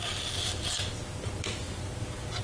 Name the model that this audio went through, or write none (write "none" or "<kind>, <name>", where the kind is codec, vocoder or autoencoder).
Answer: none